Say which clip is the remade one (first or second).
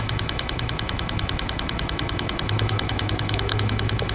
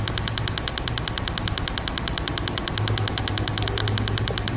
first